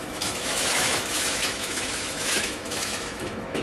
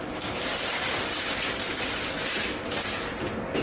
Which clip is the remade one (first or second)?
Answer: first